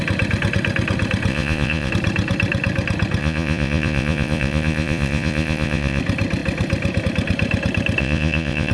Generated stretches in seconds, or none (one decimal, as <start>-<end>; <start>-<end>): 1.3-1.9; 3.2-6.0; 8.0-8.7